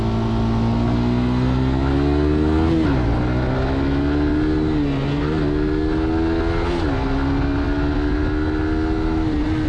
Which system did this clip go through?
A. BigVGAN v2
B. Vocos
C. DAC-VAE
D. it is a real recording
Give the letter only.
D